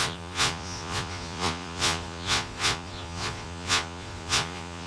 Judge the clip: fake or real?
fake